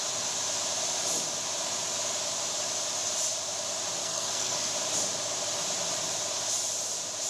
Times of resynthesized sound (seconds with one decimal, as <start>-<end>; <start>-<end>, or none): 4.0-4.7